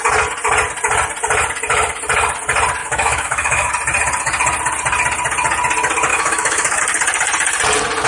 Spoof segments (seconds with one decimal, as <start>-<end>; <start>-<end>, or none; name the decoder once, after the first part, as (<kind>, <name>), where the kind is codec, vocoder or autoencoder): 2.8-3.7 (autoencoder, DAC-VAE); 6.1-6.8